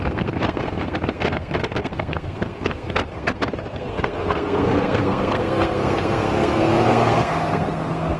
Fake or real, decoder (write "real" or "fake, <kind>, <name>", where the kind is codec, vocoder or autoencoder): fake, codec, SNAC